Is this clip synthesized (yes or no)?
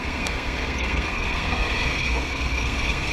yes